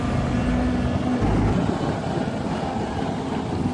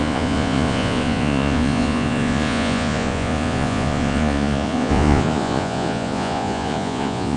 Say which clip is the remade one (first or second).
second